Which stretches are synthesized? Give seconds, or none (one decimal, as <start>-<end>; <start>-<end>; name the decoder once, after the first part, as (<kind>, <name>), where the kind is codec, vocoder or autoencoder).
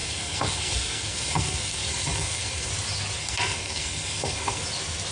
0.0-2.7 (codec, SNAC); 3.2-4.6